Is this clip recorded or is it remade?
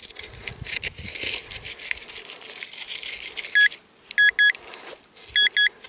recorded